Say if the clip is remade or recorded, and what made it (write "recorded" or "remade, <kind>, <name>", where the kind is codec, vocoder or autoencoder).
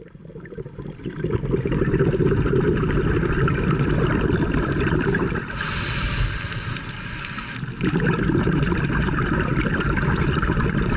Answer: remade, vocoder, BigVGAN v2